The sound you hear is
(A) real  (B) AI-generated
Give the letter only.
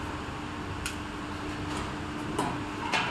A